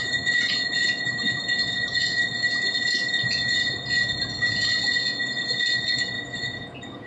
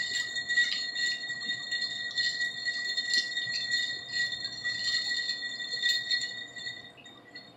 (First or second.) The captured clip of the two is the second